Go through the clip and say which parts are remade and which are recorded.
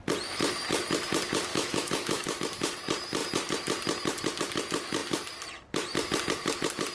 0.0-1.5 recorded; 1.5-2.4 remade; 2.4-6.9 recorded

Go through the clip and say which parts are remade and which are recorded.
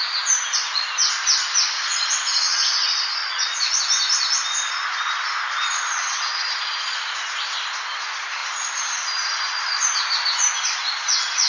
0.0-3.2 recorded; 3.2-3.8 remade; 3.8-11.5 recorded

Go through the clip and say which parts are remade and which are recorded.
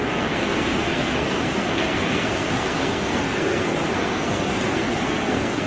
0.0-5.7 remade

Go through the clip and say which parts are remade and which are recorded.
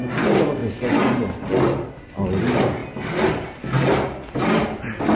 0.0-5.2 recorded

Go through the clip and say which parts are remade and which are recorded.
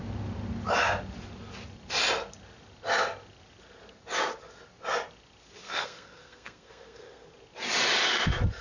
0.0-5.6 recorded; 5.6-7.3 remade; 7.3-8.6 recorded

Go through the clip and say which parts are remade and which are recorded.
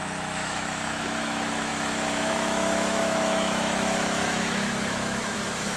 0.0-5.8 remade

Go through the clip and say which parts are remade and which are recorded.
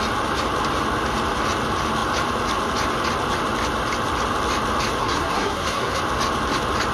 0.0-5.0 recorded; 5.0-6.0 remade; 6.0-6.9 recorded